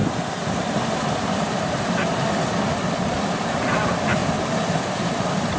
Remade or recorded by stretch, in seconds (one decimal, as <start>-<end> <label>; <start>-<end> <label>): 0.0-5.6 remade